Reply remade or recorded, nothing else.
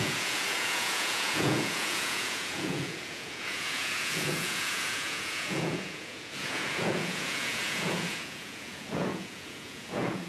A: remade